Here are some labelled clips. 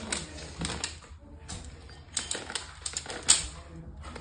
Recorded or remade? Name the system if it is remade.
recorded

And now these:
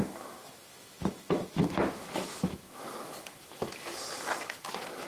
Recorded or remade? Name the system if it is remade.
remade, autoencoder, DAC-VAE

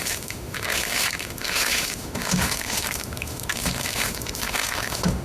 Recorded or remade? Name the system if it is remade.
remade, autoencoder, DAC-VAE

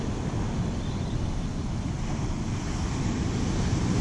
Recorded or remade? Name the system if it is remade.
recorded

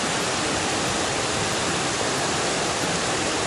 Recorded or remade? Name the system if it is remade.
recorded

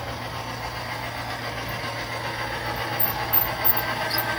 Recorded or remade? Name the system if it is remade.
recorded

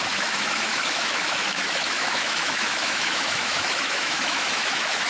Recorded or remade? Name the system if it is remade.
remade, autoencoder, DAC-VAE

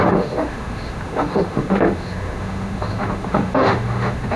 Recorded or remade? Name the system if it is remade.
remade, autoencoder, DAC-VAE